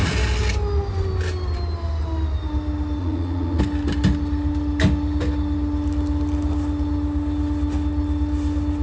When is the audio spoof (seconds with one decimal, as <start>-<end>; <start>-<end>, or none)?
3.0-3.6